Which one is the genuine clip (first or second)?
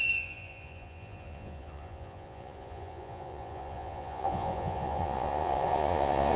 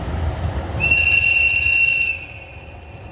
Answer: second